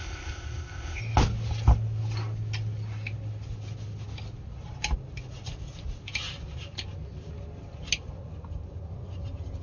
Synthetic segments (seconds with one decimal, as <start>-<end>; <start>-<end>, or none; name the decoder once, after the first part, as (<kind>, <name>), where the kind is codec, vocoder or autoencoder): 0.0-1.0 (codec, ZipCodec)